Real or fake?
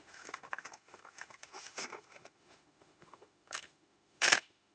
fake